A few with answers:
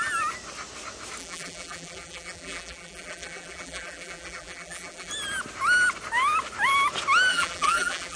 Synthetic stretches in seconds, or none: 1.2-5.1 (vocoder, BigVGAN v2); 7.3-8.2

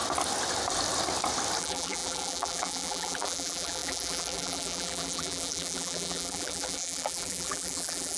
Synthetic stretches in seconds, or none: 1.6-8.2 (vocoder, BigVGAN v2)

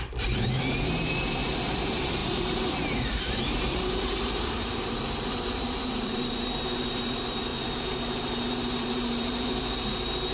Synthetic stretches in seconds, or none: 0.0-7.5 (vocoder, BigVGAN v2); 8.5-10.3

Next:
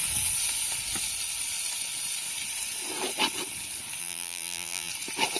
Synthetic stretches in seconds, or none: 4.0-4.9 (vocoder, BigVGAN v2)

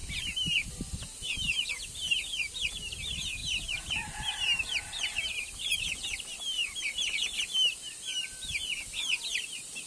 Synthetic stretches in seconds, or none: 6.6-7.3 (vocoder, BigVGAN v2)

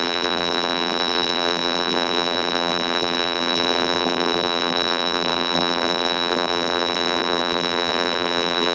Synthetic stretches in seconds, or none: 0.0-8.7 (vocoder, BigVGAN v2)

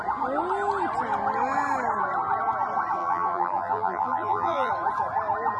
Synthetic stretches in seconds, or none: 3.0-4.7 (vocoder, BigVGAN v2)